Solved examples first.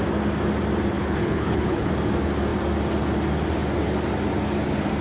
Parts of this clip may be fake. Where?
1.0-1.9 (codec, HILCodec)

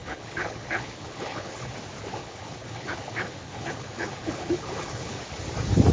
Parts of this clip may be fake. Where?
0.0-1.7 (codec, HILCodec); 2.2-5.2

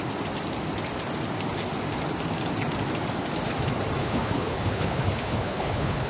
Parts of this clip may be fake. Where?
4.0-6.1 (codec, HILCodec)

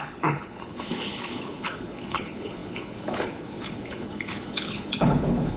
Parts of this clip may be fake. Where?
0.0-5.6 (codec, HILCodec)

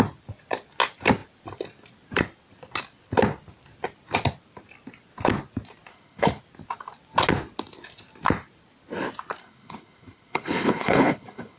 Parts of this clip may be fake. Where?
5.9-6.4 (codec, HILCodec); 9.4-11.6

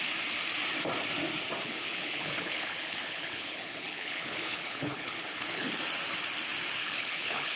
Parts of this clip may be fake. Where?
1.6-5.7 (codec, HILCodec); 6.8-7.6

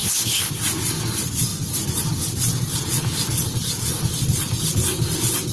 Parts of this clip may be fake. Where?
0.0-0.5 (codec, HILCodec)